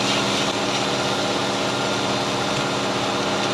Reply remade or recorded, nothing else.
recorded